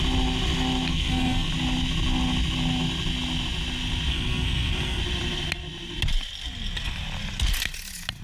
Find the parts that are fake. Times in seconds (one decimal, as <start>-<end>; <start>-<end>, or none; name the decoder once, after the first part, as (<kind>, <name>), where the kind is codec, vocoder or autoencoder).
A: 0.9-1.5 (codec, SNAC); 4.1-5.0